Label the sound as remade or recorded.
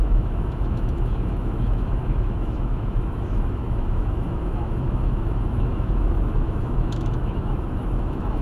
remade